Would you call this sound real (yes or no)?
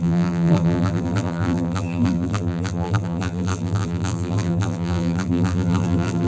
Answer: no